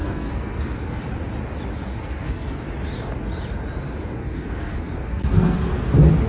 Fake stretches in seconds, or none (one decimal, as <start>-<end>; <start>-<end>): 0.0-1.0; 1.9-2.6; 4.2-5.6